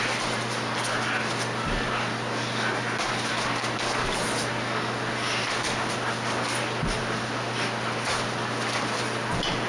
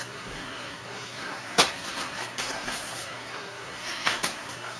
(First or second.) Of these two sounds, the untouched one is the first